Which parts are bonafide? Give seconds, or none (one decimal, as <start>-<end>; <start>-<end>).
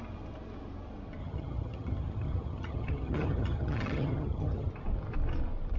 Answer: 0.0-1.2; 4.7-5.8